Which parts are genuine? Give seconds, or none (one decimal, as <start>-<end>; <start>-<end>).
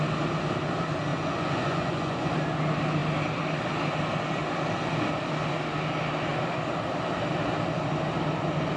0.0-1.1; 2.3-8.8